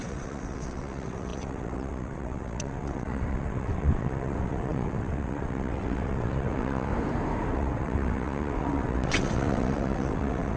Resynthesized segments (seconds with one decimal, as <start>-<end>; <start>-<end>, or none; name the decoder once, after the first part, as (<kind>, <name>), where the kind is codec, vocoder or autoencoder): 0.0-6.9 (vocoder, WaveNeXt); 7.5-10.6